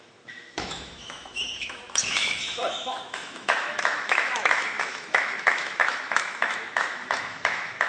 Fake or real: fake